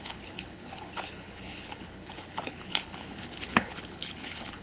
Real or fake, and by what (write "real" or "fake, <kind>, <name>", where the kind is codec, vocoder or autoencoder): fake, codec, HILCodec